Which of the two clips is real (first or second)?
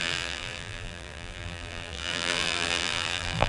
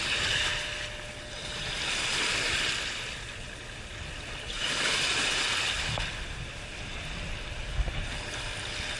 second